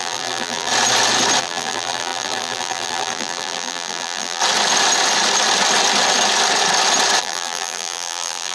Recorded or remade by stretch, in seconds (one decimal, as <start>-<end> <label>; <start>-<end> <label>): 0.0-0.7 remade; 0.7-1.4 recorded; 1.4-4.4 remade; 4.4-7.2 recorded; 7.2-8.5 remade